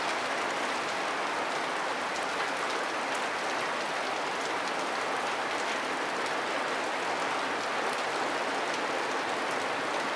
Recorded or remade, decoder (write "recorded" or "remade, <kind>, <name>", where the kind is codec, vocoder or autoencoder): recorded